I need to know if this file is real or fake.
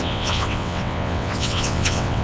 fake